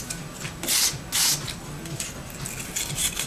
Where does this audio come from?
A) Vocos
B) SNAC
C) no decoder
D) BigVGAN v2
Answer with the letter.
C